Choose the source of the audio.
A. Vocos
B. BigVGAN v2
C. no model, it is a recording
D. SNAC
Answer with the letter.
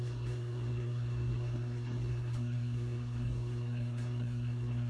D